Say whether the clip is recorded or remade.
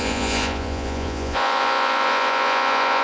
remade